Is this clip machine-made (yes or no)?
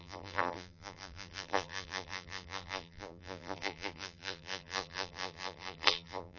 yes